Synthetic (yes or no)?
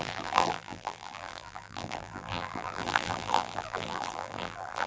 yes